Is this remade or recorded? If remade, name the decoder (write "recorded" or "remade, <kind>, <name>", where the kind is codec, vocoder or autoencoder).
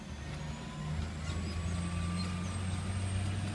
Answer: recorded